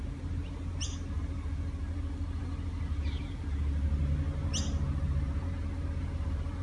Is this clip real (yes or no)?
yes